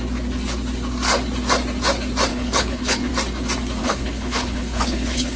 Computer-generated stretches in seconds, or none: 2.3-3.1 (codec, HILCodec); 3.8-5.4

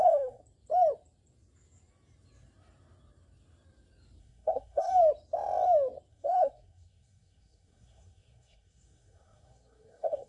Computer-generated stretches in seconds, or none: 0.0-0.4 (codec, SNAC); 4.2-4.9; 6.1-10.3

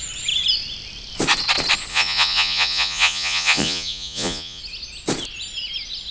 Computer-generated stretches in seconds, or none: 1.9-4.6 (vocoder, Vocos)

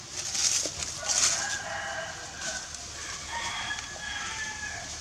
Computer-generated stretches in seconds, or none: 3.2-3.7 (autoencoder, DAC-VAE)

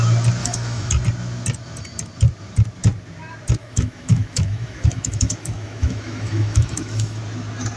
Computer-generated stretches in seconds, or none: 0.4-0.9 (autoencoder, DAC-VAE); 3.6-7.2

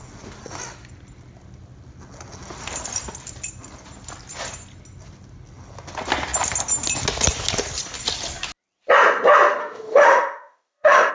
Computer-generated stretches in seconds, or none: 9.6-11.1 (autoencoder, DAC-VAE)

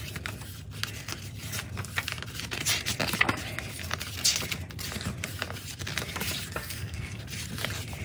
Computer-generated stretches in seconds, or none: 6.6-7.2 (codec, SNAC)

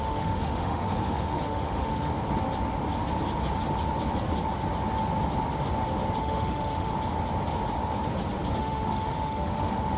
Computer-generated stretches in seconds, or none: 0.0-2.1 (autoencoder, DAC-VAE); 6.2-6.9; 8.6-10.0